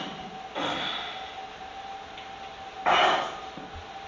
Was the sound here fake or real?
real